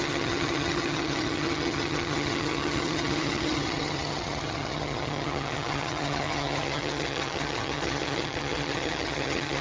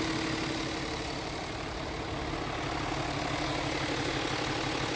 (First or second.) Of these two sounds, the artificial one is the first